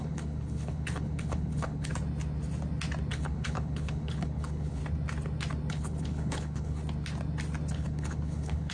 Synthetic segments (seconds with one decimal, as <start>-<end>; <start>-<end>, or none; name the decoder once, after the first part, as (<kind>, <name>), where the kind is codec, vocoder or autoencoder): 0.0-1.9 (codec, HILCodec); 3.1-4.8; 5.7-6.8; 7.7-8.7